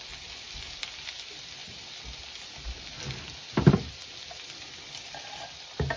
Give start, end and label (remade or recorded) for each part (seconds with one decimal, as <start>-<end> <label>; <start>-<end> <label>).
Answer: 0.0-6.0 recorded